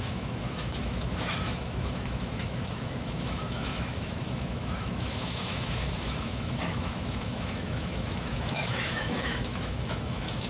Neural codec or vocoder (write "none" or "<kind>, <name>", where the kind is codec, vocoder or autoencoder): autoencoder, DAC-VAE